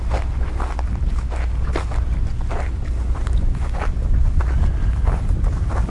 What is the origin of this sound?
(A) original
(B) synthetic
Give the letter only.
A